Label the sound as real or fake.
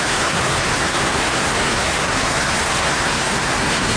fake